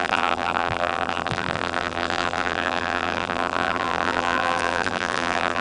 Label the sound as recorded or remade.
remade